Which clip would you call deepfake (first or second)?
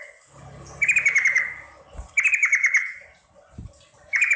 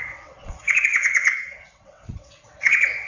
second